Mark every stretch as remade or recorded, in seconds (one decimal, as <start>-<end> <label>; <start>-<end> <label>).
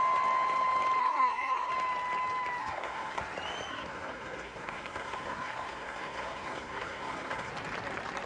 0.0-1.0 recorded; 1.0-1.7 remade; 1.7-2.6 recorded; 2.6-3.2 remade; 3.2-3.7 recorded; 3.7-7.5 remade; 7.5-8.3 recorded